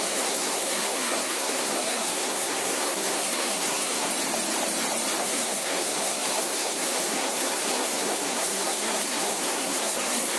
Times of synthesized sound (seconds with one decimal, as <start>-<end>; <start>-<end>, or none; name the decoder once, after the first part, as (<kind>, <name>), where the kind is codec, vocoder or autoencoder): 0.0-4.1 (codec, SNAC); 5.2-10.4